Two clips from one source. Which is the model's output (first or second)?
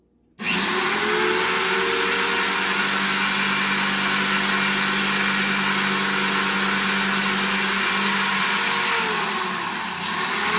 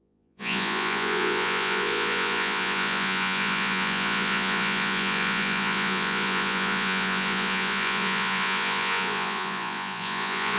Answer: second